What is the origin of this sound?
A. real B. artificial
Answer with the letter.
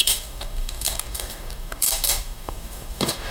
B